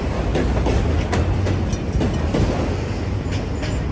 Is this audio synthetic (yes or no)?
no